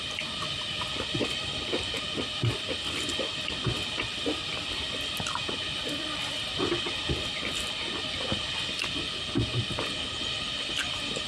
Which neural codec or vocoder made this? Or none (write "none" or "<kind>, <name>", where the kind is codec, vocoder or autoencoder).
none